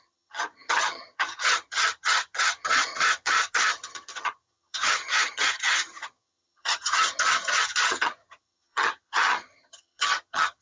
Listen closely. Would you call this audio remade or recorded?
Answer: remade